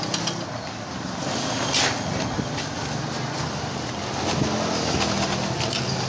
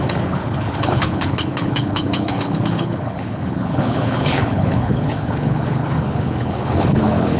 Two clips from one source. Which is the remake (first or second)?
second